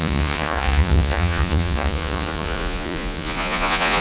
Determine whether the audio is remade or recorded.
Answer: remade